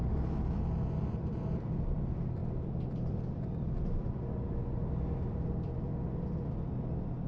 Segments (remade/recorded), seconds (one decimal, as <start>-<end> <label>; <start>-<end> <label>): 0.0-7.3 remade